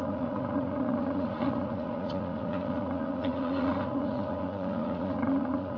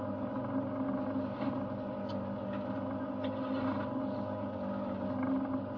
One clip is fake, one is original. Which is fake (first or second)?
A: first